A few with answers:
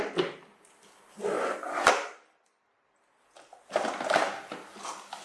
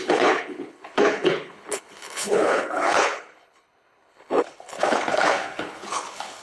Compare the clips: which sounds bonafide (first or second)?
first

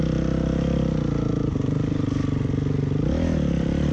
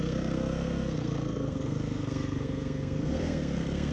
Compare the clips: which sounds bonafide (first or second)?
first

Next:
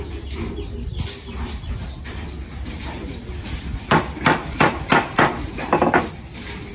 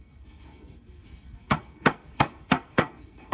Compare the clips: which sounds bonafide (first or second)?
first